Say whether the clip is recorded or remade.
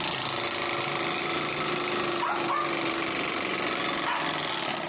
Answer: recorded